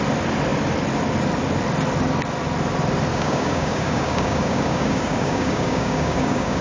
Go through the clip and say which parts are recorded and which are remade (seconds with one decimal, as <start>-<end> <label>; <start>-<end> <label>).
0.0-3.1 recorded; 3.1-6.6 remade